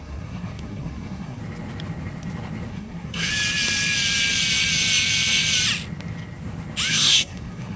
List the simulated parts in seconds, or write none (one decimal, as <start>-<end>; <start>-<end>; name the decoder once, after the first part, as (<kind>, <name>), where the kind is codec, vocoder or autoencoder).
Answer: 0.0-1.4 (codec, SNAC); 2.7-3.3; 6.9-7.8